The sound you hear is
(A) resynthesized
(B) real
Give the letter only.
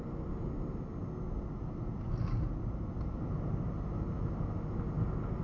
B